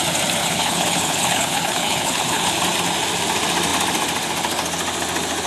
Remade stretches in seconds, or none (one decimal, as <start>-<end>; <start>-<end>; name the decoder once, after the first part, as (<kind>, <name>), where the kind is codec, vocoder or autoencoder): 0.4-2.6 (codec, HILCodec)